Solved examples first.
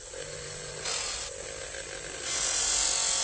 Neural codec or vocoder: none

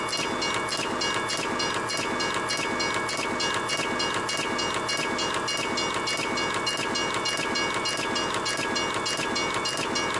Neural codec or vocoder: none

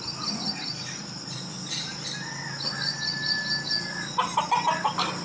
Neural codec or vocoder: none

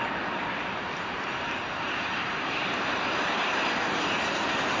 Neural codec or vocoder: vocoder, BigVGAN v2